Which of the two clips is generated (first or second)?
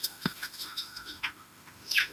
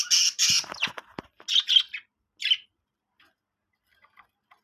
first